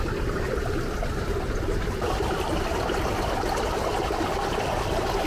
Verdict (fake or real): real